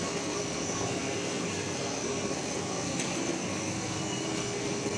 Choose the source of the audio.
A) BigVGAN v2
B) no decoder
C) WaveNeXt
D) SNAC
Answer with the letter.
D